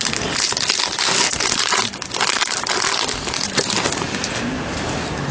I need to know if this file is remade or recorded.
recorded